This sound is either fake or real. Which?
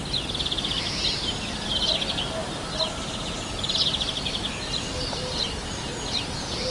real